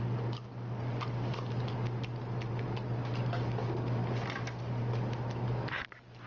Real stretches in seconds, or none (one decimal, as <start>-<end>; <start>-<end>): 0.0-6.3